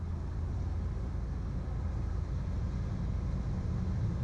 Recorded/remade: recorded